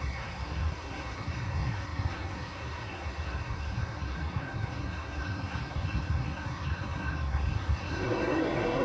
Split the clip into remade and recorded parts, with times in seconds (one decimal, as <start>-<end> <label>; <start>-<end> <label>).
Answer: 0.0-8.8 remade